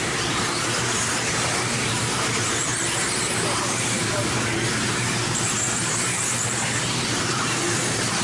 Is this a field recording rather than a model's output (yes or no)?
no